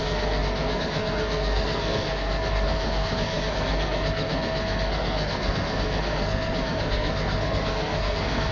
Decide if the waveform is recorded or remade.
remade